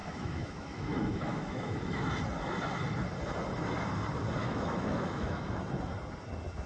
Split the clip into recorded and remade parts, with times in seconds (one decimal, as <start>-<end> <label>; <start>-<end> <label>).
0.0-2.1 remade; 2.1-4.4 recorded; 4.4-5.6 remade; 5.6-6.7 recorded